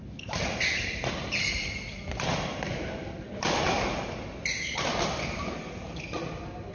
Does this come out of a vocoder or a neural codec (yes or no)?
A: no